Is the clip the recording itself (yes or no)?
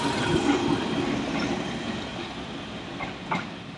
yes